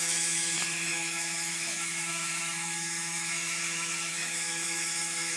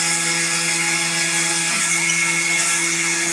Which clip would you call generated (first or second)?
first